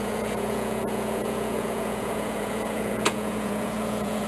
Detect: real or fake fake